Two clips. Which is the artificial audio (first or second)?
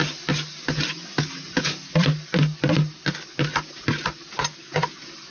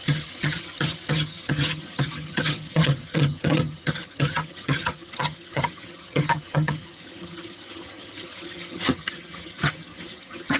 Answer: second